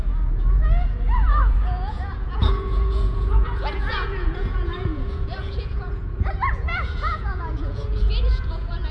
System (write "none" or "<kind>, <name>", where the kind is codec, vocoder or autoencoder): vocoder, Vocos